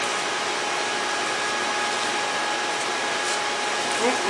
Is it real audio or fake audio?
real